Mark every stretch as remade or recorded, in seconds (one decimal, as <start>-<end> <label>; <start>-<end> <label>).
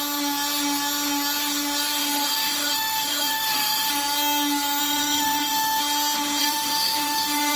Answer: 0.0-2.0 recorded; 2.0-3.9 remade; 3.9-4.8 recorded; 4.8-5.8 remade; 5.8-6.4 recorded; 6.4-7.6 remade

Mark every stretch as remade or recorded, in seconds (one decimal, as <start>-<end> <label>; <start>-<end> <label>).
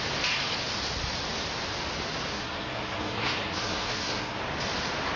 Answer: 0.0-2.3 recorded; 2.3-4.4 remade; 4.4-5.2 recorded